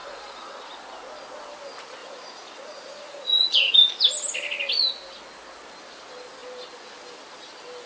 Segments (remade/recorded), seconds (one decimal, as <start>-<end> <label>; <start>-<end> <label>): 0.0-0.6 remade; 0.6-2.0 recorded; 2.0-3.9 remade; 3.9-7.9 recorded

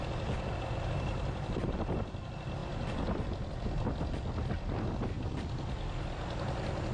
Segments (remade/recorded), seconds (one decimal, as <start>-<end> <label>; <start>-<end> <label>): 0.0-6.9 recorded

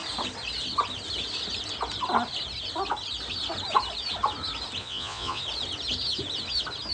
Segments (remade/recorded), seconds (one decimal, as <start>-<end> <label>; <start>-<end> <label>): 0.0-4.8 recorded; 4.8-5.4 remade; 5.4-6.9 recorded

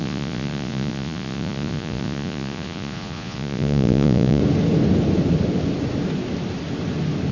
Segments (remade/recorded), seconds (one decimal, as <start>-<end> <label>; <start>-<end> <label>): 0.0-4.4 remade; 4.4-7.3 recorded

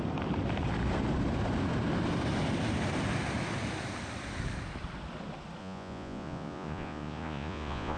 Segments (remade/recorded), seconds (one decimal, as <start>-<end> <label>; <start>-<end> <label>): 0.0-5.6 recorded; 5.6-8.0 remade

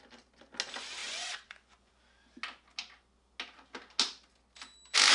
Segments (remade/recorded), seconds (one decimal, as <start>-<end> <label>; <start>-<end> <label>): 0.0-1.0 recorded; 1.0-1.9 remade; 1.9-5.1 recorded

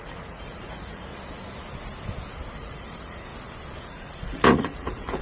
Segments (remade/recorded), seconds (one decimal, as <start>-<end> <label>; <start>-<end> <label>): 0.0-1.1 remade; 1.1-2.5 recorded; 2.5-3.3 remade; 3.3-3.8 recorded; 3.8-5.2 remade